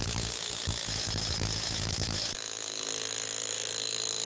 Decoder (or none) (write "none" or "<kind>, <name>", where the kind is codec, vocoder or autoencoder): autoencoder, DAC-VAE